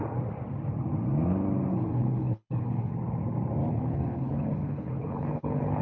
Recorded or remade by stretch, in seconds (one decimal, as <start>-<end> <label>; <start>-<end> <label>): 0.0-1.7 recorded; 1.7-2.9 remade; 2.9-3.6 recorded; 3.6-5.8 remade